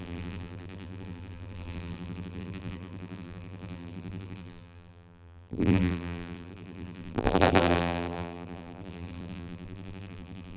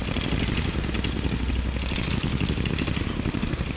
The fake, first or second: first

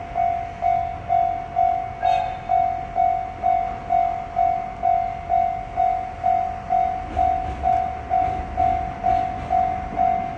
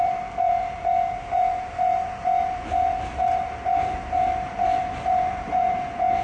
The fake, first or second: second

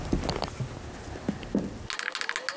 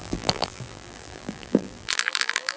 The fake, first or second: second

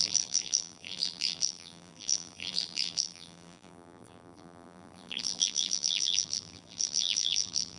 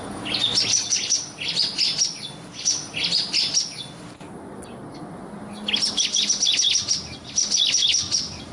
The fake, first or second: first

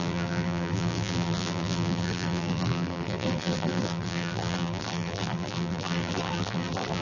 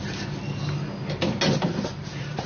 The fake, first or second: first